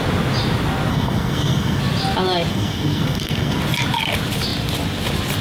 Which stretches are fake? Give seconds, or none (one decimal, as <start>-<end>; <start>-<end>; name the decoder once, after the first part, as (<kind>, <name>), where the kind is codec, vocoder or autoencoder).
0.9-1.8 (codec, SNAC); 2.5-3.6